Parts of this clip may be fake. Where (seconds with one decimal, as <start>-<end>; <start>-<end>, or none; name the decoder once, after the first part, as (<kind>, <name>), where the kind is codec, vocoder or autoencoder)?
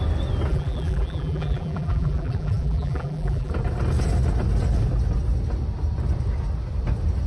0.5-3.5 (vocoder, BigVGAN v2)